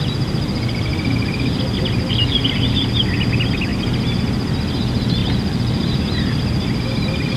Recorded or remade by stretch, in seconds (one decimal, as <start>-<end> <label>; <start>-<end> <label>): 0.0-5.2 recorded; 5.2-6.0 remade; 6.0-7.4 recorded